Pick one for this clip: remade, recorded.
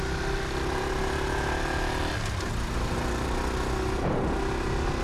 recorded